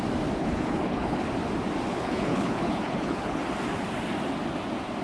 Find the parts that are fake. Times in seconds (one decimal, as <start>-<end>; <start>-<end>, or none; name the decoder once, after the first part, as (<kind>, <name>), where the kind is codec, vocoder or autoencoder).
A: 0.4-1.3 (codec, HILCodec); 1.9-3.4